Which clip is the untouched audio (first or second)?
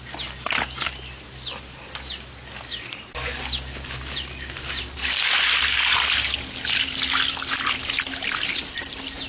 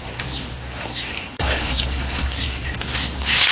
first